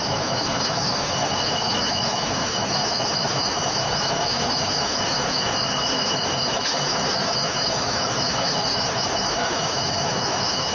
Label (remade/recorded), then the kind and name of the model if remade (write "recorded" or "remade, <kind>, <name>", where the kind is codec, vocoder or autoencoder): remade, autoencoder, DAC-VAE